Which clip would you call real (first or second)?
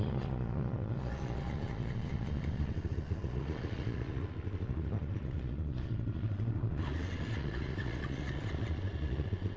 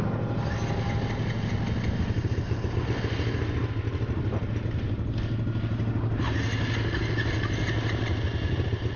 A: second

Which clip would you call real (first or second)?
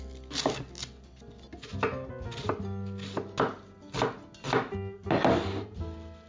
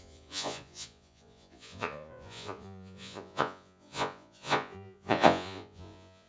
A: first